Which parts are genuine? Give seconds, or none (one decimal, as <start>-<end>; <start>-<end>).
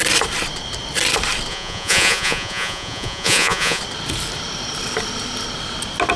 0.0-1.5; 3.8-6.2